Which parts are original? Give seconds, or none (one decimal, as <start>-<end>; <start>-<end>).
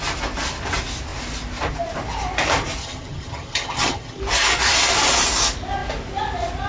0.0-2.8; 4.2-6.7